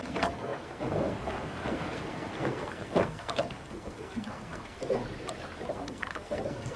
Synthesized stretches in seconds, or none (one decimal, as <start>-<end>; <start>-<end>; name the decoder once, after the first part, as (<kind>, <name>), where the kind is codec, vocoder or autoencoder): 0.0-5.0 (codec, SNAC); 5.7-6.8